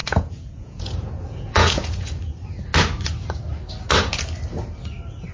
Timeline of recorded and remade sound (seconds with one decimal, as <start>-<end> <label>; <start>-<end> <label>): 0.0-2.2 remade; 2.2-5.3 recorded